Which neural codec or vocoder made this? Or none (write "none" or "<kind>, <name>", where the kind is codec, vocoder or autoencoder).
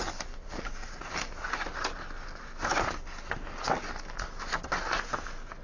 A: none